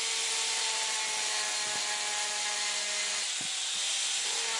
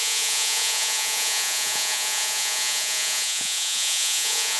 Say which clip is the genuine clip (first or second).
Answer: first